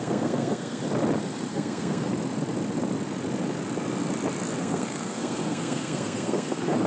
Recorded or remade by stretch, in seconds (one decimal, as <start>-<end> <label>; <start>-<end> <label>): 0.0-0.8 remade; 0.8-1.5 recorded; 1.5-2.1 remade; 2.1-4.6 recorded; 4.6-6.9 remade